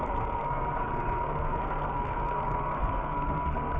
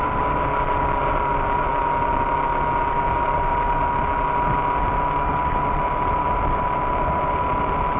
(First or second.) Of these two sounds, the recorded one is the second